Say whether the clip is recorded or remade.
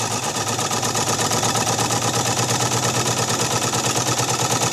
recorded